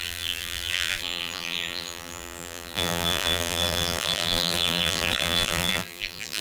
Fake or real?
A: fake